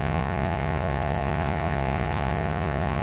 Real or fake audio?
fake